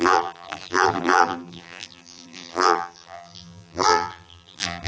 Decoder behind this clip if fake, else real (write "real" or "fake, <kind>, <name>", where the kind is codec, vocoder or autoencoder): fake, vocoder, BigVGAN v2